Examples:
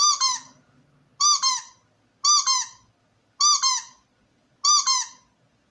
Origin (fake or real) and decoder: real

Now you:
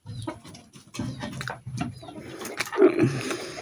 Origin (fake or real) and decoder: fake, vocoder, BigVGAN v2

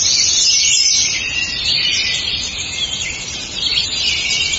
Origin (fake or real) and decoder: real